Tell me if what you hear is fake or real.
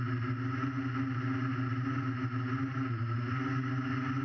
real